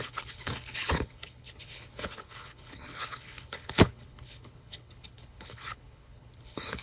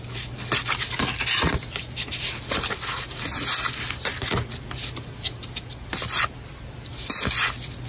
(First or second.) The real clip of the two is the second